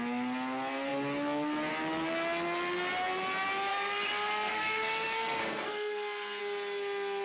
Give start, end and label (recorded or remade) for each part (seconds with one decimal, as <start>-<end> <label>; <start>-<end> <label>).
0.0-3.7 recorded; 3.7-6.4 remade; 6.4-7.2 recorded